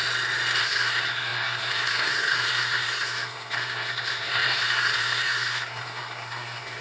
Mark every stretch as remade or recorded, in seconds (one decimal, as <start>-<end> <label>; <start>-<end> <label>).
0.0-0.6 recorded; 0.6-6.8 remade

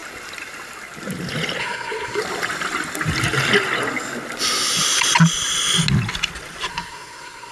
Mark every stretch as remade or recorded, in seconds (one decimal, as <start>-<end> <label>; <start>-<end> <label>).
0.0-1.6 recorded; 1.6-2.2 remade; 2.2-6.7 recorded; 6.7-7.5 remade

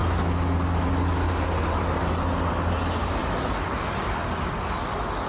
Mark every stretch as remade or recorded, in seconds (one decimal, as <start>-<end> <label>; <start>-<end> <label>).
0.0-5.3 recorded